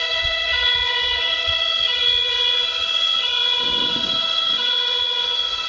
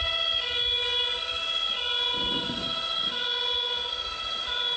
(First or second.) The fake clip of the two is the first